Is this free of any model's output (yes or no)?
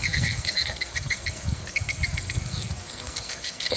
no